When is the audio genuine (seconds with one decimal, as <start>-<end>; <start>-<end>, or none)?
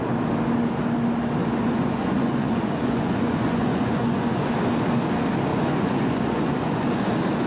0.0-1.4; 4.5-5.5; 7.1-7.5